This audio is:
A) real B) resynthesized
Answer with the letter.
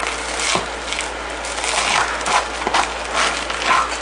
A